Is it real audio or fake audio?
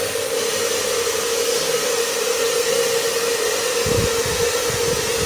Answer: real